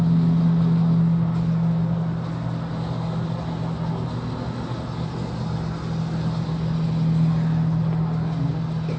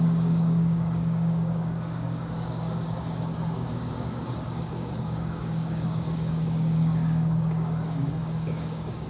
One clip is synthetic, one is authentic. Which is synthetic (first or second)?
second